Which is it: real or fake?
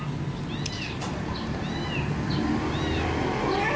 real